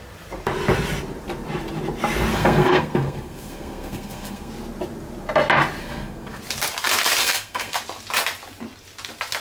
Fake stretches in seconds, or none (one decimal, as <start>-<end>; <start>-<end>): 2.3-4.5; 5.8-6.4; 7.2-7.8